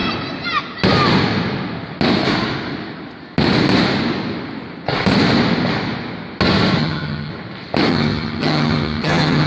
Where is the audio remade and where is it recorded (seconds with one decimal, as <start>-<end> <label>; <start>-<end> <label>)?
0.0-6.8 recorded; 6.8-7.3 remade; 7.3-7.9 recorded; 7.9-9.5 remade